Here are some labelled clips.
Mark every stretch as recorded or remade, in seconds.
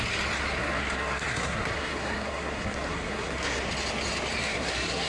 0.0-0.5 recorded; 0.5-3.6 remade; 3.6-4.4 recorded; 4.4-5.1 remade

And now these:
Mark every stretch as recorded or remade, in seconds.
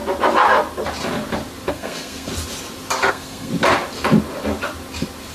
0.0-1.7 recorded; 1.7-2.3 remade; 2.3-3.1 recorded; 3.1-3.5 remade; 3.5-5.3 recorded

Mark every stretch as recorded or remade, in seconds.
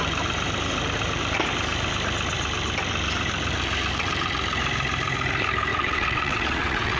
0.0-5.7 recorded; 5.7-7.0 remade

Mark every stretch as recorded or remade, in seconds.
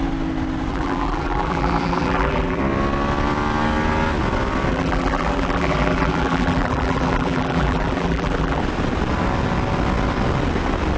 0.0-0.7 recorded; 0.7-2.6 remade; 2.6-4.7 recorded; 4.7-8.6 remade; 8.6-11.0 recorded